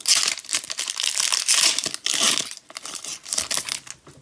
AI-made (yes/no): no